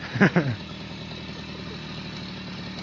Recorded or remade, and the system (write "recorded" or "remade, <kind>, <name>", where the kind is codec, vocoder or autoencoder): recorded